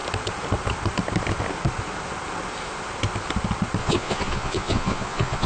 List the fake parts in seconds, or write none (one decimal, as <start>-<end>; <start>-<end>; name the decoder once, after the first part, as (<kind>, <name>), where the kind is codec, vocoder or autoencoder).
3.8-5.5 (vocoder, Vocos)